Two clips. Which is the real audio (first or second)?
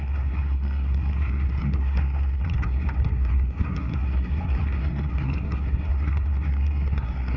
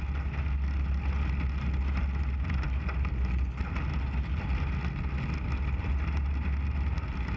second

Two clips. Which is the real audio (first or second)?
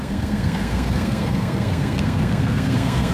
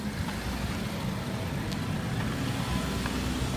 second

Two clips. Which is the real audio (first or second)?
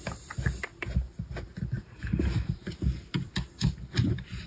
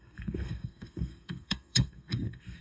first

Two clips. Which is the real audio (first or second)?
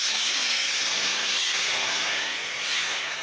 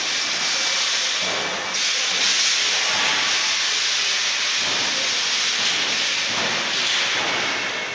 second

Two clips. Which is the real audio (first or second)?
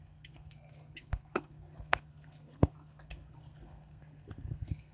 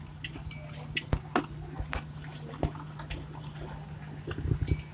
second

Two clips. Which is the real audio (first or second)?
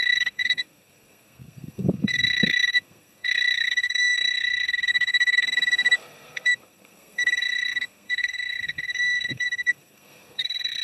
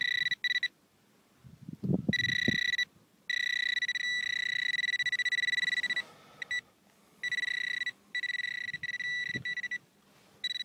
second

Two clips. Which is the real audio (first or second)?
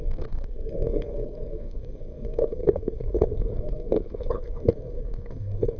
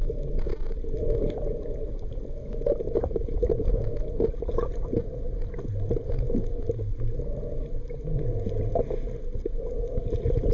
second